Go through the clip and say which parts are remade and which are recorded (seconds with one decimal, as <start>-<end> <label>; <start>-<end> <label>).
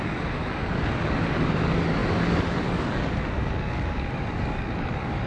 0.0-5.3 remade